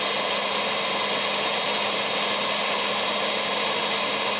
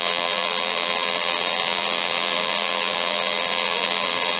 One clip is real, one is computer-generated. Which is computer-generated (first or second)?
second